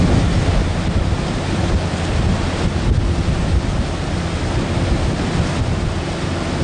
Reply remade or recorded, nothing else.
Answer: recorded